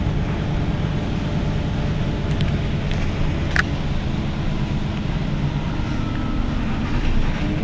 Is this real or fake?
real